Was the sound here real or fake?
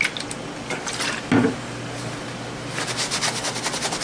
real